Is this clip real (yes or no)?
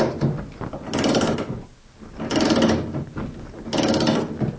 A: yes